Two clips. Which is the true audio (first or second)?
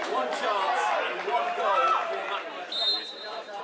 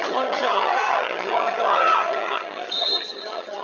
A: first